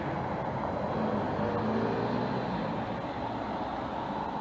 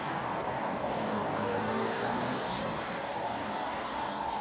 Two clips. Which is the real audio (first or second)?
first